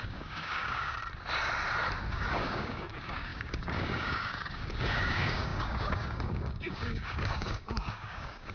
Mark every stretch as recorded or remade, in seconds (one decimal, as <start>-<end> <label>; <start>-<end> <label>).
0.0-1.0 remade; 1.0-2.1 recorded; 2.1-8.5 remade